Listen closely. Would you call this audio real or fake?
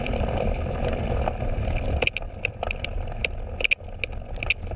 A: real